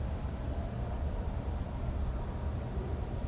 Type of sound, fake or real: real